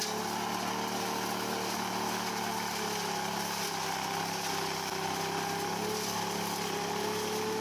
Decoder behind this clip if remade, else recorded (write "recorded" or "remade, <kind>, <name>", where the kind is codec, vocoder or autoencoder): recorded